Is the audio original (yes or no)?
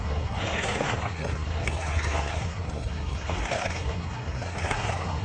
no